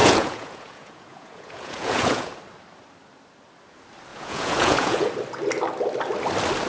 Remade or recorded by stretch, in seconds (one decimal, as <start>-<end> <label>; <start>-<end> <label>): 0.0-2.3 remade; 2.3-4.1 recorded; 4.1-5.1 remade; 5.1-6.7 recorded